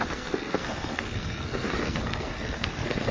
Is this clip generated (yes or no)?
yes